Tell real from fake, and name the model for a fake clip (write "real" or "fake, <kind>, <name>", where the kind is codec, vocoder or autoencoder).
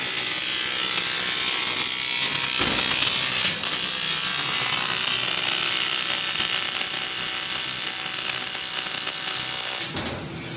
real